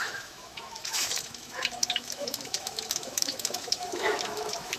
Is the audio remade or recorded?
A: remade